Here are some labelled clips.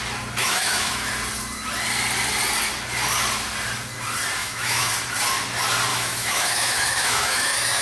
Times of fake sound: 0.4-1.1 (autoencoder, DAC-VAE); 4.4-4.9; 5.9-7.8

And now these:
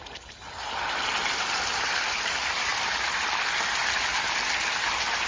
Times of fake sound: none

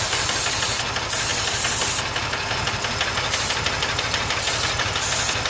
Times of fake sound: none

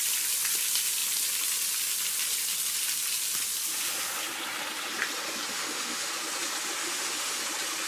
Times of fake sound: 5.5-6.1 (autoencoder, DAC-VAE); 6.8-7.4

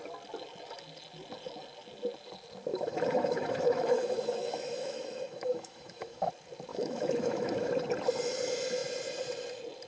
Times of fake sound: 2.7-6.3 (autoencoder, DAC-VAE); 6.7-7.7

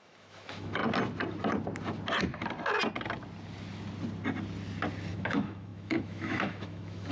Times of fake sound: 0.0-0.8 (autoencoder, DAC-VAE); 5.1-7.1